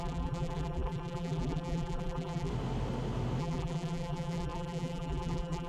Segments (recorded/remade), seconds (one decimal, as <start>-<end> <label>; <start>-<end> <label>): 0.0-2.5 remade; 2.5-3.4 recorded; 3.4-5.7 remade